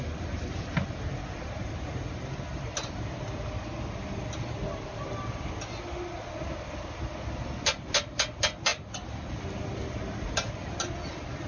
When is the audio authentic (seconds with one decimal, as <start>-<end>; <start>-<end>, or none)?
0.0-11.5